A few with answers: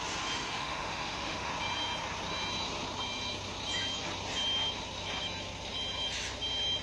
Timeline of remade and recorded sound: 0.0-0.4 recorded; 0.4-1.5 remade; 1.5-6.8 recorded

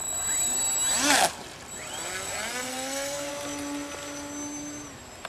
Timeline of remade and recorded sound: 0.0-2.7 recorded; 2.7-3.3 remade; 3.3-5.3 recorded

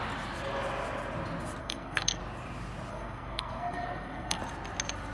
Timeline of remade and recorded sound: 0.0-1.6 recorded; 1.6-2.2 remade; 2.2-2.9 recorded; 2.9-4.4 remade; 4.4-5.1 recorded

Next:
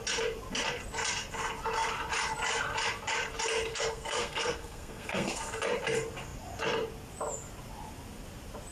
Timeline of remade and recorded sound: 0.0-3.7 recorded; 3.7-5.6 remade; 5.6-8.7 recorded

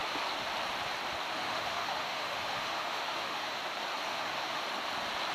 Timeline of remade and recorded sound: 0.0-1.3 recorded; 1.3-3.6 remade; 3.6-4.1 recorded; 4.1-4.6 remade; 4.6-5.3 recorded

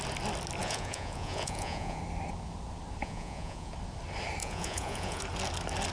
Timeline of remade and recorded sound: 0.0-0.6 recorded; 0.6-2.0 remade; 2.0-3.0 recorded; 3.0-3.7 remade; 3.7-4.4 recorded; 4.4-5.2 remade; 5.2-5.9 recorded